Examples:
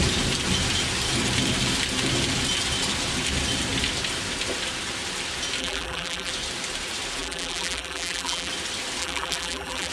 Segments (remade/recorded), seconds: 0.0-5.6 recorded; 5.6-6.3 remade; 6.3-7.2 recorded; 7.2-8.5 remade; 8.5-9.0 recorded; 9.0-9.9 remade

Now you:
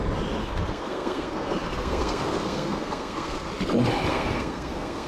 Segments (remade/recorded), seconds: 0.0-0.4 recorded; 0.4-3.5 remade; 3.5-4.1 recorded; 4.1-5.1 remade

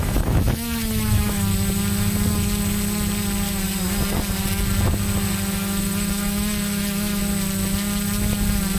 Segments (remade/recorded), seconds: 0.0-1.5 remade; 1.5-5.5 recorded; 5.5-7.2 remade; 7.2-8.8 recorded

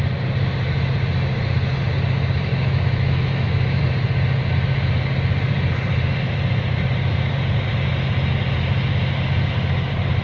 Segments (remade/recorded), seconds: 0.0-2.5 recorded; 2.5-3.8 remade; 3.8-10.2 recorded

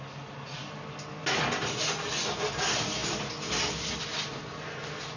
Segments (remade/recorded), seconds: 0.0-5.2 recorded

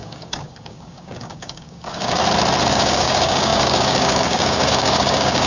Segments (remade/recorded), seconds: 0.0-2.2 remade; 2.2-2.7 recorded; 2.7-5.5 remade

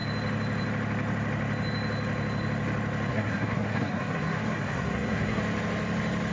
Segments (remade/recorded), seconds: 0.0-3.1 recorded; 3.1-5.4 remade; 5.4-6.3 recorded

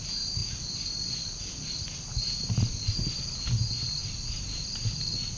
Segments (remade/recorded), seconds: 0.0-5.4 recorded